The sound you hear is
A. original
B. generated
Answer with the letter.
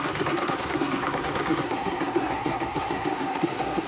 B